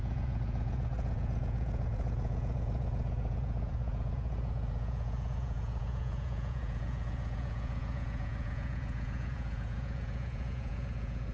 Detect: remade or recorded remade